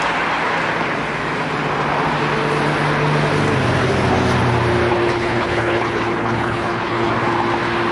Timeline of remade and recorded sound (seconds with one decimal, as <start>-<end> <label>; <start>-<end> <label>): 0.0-4.9 recorded; 4.9-7.1 remade; 7.1-7.9 recorded